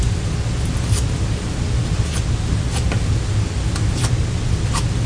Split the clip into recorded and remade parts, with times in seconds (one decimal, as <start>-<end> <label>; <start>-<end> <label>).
0.0-5.1 recorded